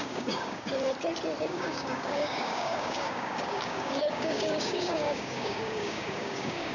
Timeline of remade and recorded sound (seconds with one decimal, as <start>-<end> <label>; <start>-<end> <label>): 0.0-0.7 remade; 0.7-1.4 recorded; 1.4-6.7 remade